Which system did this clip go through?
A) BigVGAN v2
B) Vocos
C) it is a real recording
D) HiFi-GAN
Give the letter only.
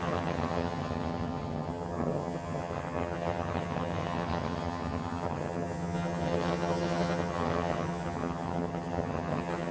D